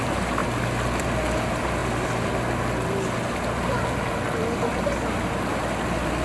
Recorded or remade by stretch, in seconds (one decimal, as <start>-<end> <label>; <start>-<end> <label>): 0.0-6.2 recorded